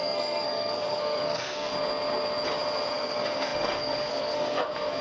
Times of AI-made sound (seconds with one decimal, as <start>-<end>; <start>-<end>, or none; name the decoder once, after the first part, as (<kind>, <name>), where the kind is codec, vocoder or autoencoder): 0.0-1.7 (codec, SNAC); 2.9-5.0